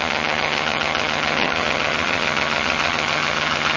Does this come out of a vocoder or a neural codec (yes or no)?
yes